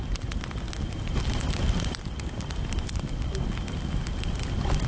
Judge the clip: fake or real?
real